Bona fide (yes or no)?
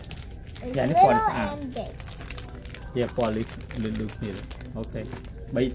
yes